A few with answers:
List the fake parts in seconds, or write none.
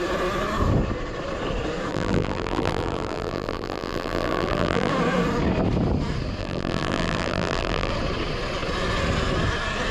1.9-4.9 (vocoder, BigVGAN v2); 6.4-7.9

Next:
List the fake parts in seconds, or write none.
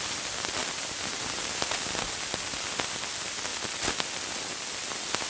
none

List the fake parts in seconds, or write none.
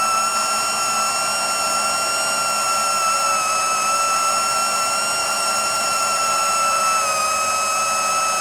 5.2-6.8 (vocoder, BigVGAN v2)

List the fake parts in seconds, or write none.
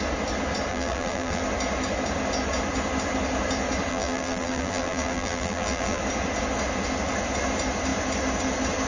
0.7-1.4 (vocoder, BigVGAN v2); 3.9-6.0